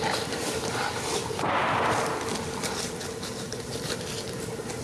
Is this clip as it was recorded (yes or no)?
yes